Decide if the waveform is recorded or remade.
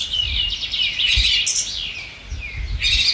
recorded